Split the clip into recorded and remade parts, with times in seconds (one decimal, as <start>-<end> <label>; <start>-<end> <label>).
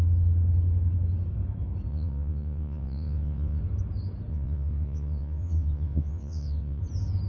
0.0-1.9 recorded; 1.9-3.6 remade; 3.6-4.3 recorded; 4.3-6.8 remade; 6.8-7.3 recorded